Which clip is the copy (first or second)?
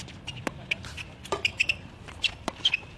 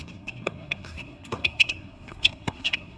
second